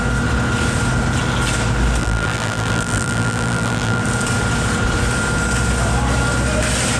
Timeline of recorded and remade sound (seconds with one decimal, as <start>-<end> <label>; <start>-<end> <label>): 0.0-2.0 recorded; 2.0-4.0 remade; 4.0-7.0 recorded